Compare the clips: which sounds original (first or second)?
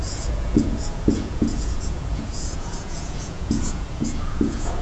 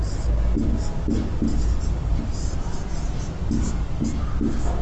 second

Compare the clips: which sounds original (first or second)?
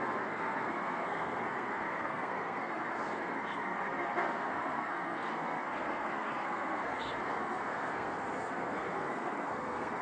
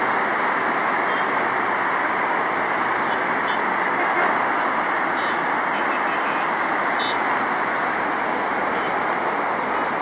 second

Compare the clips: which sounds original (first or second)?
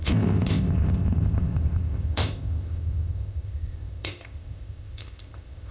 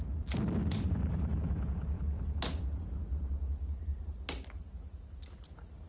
second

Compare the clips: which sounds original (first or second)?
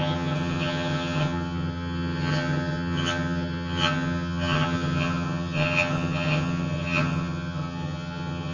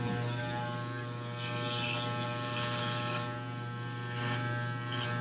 second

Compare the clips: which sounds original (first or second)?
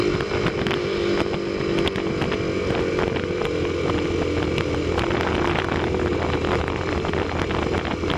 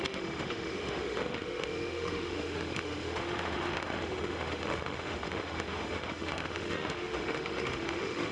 first